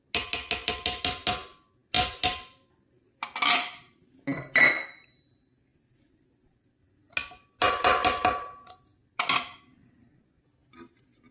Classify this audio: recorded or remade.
recorded